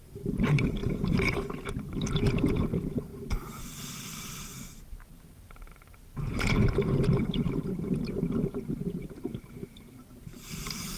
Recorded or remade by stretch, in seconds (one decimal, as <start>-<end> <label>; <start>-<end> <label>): 0.0-0.8 remade; 0.8-2.5 recorded; 2.5-11.0 remade